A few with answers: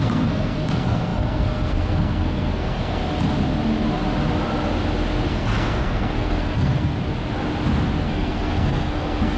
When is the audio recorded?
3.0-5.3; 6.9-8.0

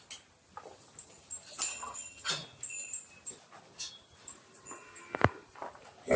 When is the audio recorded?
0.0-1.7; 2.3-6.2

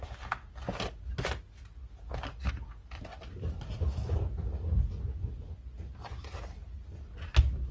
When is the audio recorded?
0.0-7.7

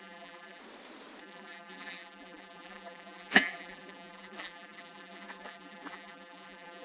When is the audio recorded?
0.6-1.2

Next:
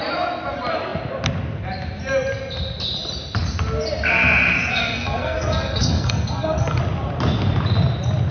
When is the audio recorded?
0.0-4.7; 6.8-8.3

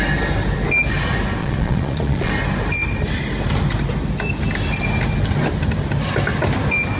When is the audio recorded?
0.0-1.4; 2.3-7.0